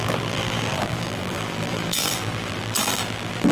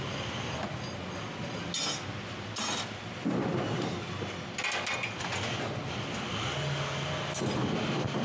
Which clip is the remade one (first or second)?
first